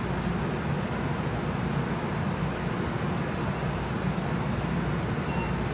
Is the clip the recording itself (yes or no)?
yes